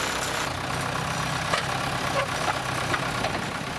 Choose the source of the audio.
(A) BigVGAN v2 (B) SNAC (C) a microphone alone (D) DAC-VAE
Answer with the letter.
C